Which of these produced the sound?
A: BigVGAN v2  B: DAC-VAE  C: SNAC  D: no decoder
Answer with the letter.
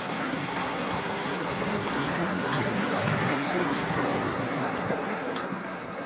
C